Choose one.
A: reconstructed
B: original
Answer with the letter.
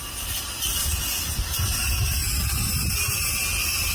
B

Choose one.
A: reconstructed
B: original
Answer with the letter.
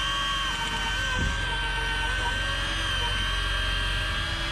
B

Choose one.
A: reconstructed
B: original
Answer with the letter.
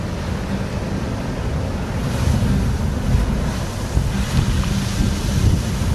B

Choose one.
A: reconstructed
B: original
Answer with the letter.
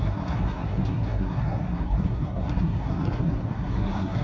A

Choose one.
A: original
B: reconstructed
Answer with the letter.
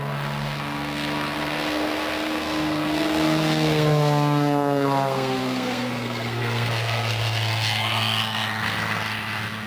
B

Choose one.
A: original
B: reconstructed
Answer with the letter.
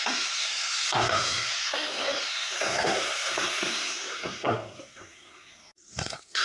B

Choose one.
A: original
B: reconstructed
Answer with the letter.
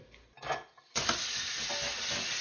A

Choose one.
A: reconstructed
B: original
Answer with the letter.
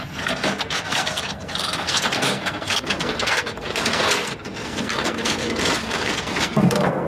A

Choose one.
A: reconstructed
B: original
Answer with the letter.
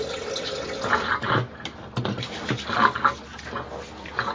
B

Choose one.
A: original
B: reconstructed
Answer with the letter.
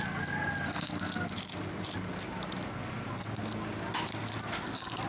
A